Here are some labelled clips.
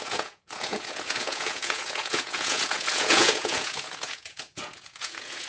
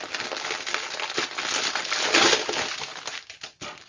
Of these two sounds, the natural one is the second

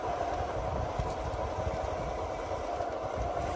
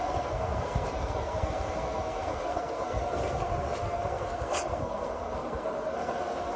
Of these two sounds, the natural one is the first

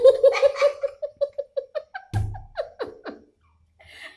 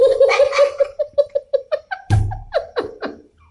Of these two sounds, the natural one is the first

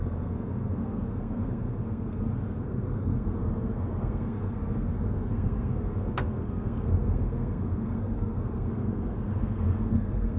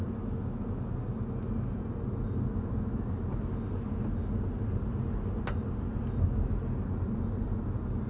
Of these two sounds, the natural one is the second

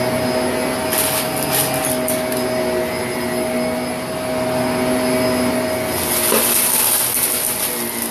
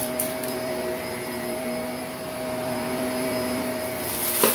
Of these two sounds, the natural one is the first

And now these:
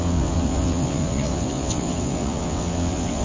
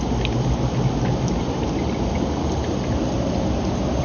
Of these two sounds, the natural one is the second